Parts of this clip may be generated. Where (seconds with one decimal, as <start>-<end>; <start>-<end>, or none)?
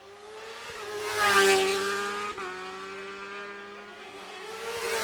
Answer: 4.0-4.5